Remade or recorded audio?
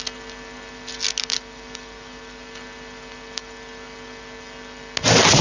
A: recorded